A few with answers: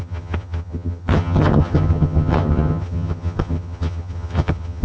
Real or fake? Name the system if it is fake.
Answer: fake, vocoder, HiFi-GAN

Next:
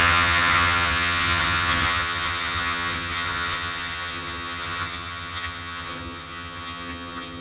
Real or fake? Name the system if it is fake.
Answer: fake, vocoder, HiFi-GAN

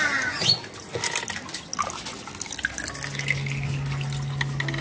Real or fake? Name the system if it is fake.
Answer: real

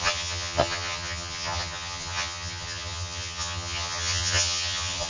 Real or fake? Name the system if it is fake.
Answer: fake, vocoder, HiFi-GAN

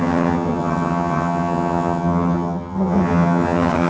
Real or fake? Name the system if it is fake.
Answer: fake, vocoder, HiFi-GAN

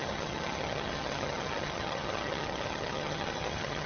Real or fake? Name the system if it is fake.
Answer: fake, vocoder, HiFi-GAN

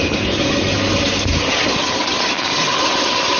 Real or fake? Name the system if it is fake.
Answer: real